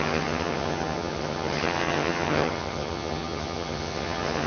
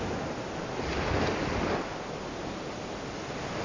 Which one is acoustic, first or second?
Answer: second